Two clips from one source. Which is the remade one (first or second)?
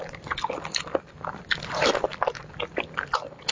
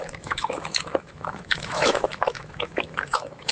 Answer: second